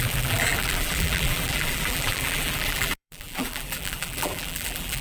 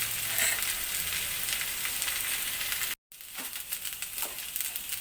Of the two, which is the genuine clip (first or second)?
second